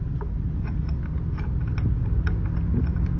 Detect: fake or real real